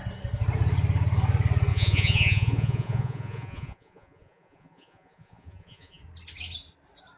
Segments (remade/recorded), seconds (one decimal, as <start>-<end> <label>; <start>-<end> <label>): 0.0-1.7 recorded; 1.7-6.0 remade; 6.0-7.2 recorded